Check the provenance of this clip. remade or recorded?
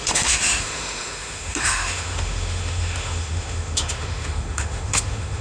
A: remade